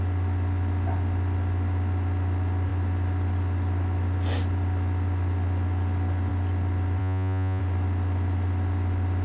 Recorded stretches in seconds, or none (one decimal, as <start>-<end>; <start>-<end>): 0.0-7.0; 7.6-9.2

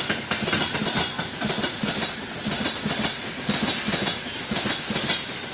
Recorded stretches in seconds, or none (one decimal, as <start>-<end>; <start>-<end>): 0.0-5.5

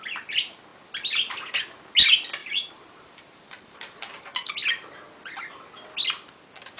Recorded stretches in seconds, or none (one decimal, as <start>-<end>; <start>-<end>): 0.0-2.4; 4.5-6.8